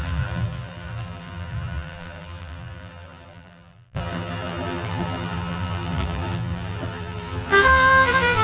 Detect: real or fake fake